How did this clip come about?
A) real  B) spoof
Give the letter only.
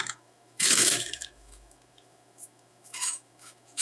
B